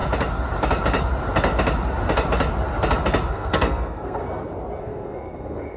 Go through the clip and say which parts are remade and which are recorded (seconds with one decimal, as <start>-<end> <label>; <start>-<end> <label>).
0.0-3.3 recorded; 3.3-4.2 remade; 4.2-4.8 recorded; 4.8-5.8 remade